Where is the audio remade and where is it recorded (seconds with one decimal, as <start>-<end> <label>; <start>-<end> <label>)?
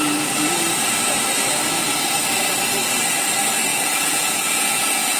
0.0-3.7 recorded; 3.7-5.2 remade